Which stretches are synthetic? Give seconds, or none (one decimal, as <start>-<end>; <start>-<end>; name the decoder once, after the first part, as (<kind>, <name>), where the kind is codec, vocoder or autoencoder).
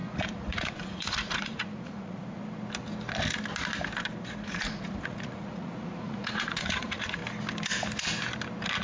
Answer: 0.0-2.4 (vocoder, Vocos); 4.4-7.2